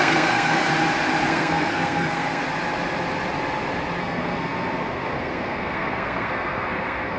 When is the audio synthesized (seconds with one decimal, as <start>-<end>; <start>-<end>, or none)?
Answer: 0.0-0.7; 1.3-2.4; 4.0-7.2